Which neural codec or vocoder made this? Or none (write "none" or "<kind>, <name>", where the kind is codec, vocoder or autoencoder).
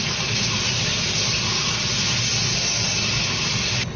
none